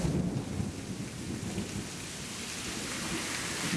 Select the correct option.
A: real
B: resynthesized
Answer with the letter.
A